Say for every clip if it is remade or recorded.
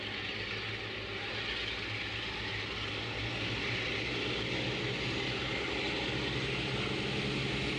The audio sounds recorded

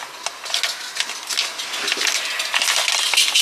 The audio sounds recorded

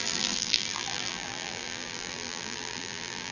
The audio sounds remade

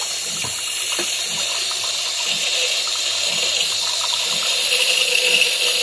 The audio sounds recorded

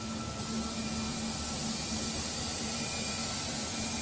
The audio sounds recorded